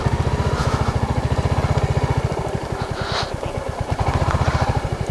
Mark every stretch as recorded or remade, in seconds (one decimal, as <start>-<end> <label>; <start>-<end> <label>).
0.0-0.6 remade; 0.6-3.7 recorded; 3.7-5.1 remade